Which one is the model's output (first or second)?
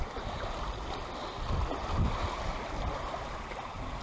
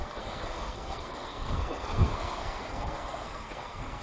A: second